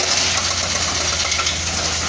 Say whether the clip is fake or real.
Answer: real